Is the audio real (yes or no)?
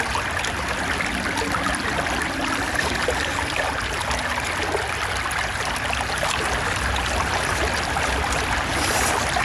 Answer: yes